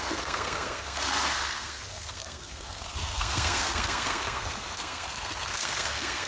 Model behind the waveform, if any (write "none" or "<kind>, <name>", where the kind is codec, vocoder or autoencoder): codec, SNAC